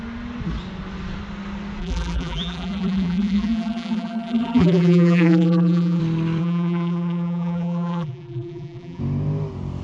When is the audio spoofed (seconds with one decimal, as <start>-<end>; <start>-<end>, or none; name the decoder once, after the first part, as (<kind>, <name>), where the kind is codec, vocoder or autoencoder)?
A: 1.8-6.0 (vocoder, BigVGAN v2); 6.4-9.0